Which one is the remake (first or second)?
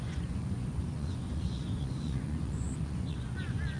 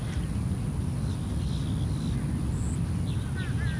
first